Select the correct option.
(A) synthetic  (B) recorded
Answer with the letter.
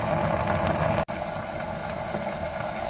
B